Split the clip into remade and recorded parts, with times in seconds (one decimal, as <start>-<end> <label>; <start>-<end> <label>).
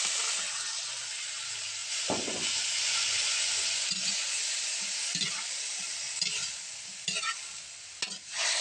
0.0-1.8 recorded; 1.8-4.3 remade; 4.3-8.6 recorded